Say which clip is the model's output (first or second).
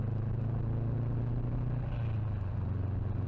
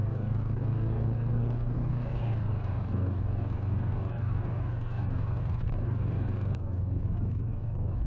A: second